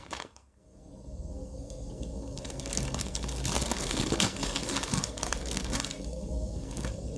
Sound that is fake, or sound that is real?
fake